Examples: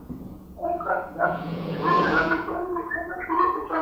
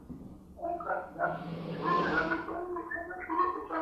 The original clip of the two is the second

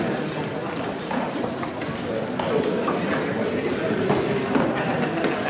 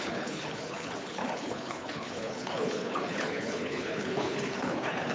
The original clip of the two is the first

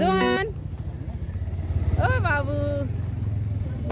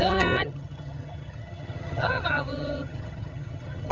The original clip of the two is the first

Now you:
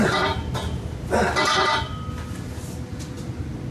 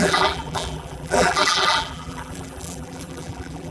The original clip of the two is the first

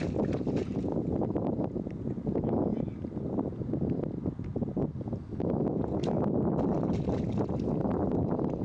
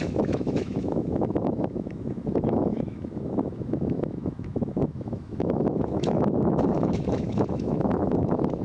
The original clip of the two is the first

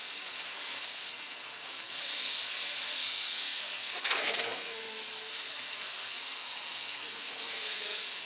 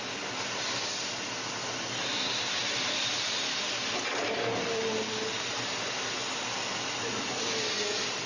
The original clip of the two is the second